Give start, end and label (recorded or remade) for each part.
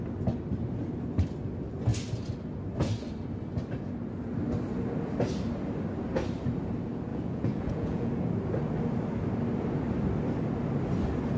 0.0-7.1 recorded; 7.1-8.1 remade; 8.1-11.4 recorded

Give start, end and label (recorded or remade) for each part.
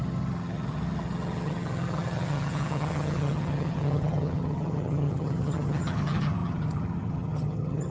0.0-7.9 remade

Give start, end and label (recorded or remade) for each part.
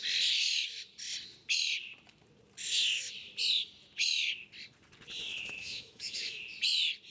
0.0-5.2 recorded; 5.2-6.4 remade; 6.4-7.1 recorded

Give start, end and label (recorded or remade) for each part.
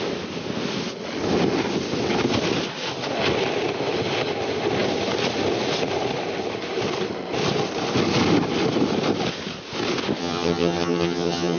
0.0-10.2 recorded; 10.2-11.6 remade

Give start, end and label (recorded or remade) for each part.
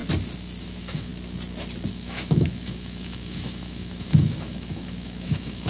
0.0-0.6 recorded; 0.6-1.1 remade; 1.1-1.9 recorded; 1.9-5.7 remade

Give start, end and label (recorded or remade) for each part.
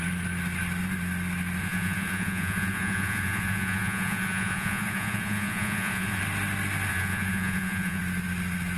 0.0-1.6 recorded; 1.6-6.2 remade; 6.2-6.9 recorded; 6.9-8.0 remade; 8.0-8.8 recorded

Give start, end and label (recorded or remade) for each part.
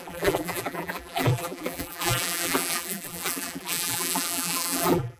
0.0-5.2 remade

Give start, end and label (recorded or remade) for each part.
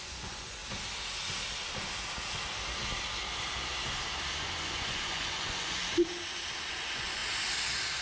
0.0-0.6 remade; 0.6-4.4 recorded; 4.4-5.8 remade; 5.8-6.7 recorded; 6.7-7.2 remade; 7.2-8.0 recorded